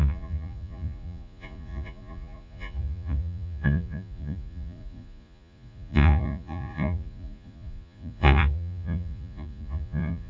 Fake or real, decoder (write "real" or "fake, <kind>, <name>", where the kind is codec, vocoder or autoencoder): fake, vocoder, Vocos